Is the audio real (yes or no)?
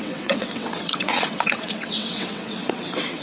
no